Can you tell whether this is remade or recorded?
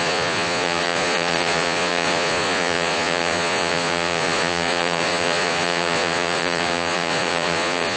remade